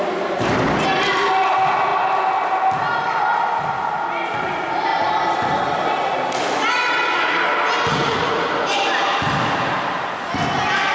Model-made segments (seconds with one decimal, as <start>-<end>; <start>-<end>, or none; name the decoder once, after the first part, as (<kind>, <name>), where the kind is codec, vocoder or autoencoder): 7.9-8.4 (vocoder, Vocos)